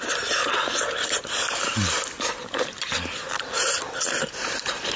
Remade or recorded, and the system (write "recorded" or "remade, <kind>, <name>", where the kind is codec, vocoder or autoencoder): recorded